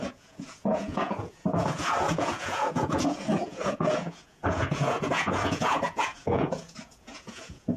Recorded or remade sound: remade